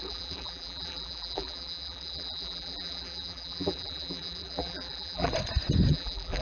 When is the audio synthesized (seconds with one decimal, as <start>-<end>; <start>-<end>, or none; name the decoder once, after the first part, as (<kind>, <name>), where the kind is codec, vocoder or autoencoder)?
0.0-5.3 (vocoder, BigVGAN v2); 5.9-6.4